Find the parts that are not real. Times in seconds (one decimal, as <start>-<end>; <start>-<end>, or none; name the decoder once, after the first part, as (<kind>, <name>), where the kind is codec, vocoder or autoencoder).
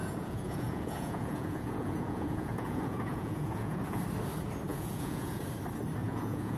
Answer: 0.0-4.0 (vocoder, Vocos); 4.7-5.4; 6.0-6.6